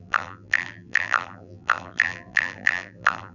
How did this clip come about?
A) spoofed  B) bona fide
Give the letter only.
A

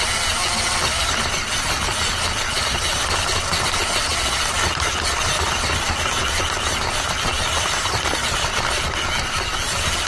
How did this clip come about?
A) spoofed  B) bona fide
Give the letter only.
B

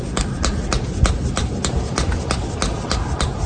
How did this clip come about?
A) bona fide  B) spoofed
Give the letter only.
A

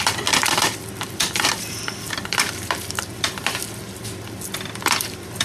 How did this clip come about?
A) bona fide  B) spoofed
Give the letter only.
B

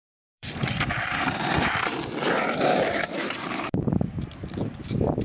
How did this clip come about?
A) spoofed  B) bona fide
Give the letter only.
A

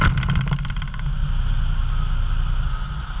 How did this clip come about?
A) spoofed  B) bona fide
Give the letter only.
B